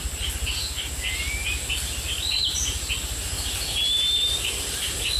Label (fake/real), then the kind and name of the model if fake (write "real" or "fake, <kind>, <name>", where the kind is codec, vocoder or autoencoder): real